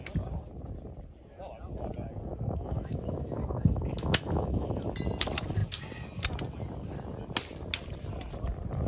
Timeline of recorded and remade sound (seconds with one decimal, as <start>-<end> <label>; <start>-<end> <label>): 0.0-2.3 recorded; 2.3-4.8 remade; 4.8-8.9 recorded